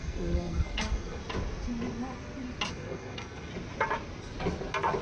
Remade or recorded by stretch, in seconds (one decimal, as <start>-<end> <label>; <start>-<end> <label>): 0.0-1.2 remade; 1.2-2.7 recorded; 2.7-3.5 remade; 3.5-5.0 recorded